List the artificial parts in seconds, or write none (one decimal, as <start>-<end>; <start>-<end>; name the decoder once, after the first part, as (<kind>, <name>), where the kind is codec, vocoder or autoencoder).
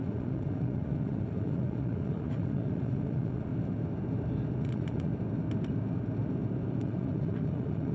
0.0-3.5 (vocoder, Vocos); 4.6-5.1; 6.8-7.9